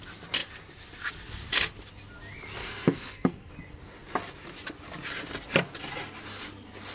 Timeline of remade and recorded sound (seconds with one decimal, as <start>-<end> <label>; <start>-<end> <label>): 0.0-2.6 recorded; 2.6-3.5 remade; 3.5-6.9 recorded